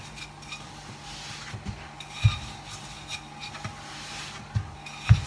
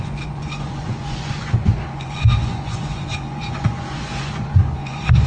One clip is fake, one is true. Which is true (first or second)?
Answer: first